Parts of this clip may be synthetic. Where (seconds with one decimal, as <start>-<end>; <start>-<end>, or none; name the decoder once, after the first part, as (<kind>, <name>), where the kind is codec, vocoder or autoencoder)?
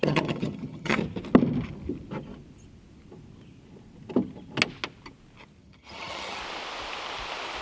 0.0-1.0 (vocoder, HiFi-GAN); 5.6-6.4